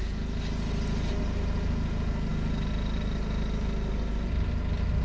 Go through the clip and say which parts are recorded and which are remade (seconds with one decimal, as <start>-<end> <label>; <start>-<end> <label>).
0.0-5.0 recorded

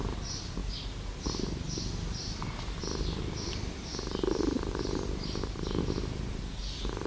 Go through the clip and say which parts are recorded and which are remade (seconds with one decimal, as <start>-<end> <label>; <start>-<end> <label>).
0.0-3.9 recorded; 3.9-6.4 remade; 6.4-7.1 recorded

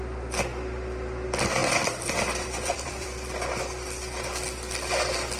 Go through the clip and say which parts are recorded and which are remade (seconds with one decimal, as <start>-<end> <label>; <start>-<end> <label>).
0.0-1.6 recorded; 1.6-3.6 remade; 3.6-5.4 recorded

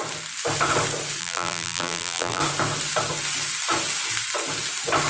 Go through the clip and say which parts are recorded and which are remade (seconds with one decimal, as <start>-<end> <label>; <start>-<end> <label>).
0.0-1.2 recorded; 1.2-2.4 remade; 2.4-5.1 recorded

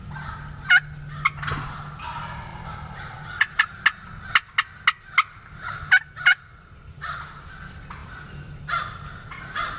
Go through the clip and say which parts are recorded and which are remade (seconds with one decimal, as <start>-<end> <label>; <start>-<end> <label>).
0.0-2.5 recorded; 2.5-3.7 remade; 3.7-6.3 recorded; 6.3-7.6 remade; 7.6-8.0 recorded; 8.0-9.4 remade; 9.4-9.8 recorded